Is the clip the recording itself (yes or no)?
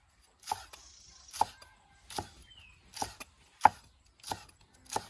yes